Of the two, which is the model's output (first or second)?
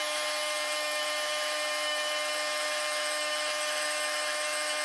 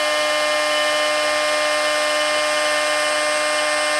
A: first